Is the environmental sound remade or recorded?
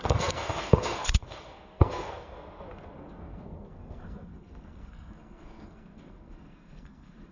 remade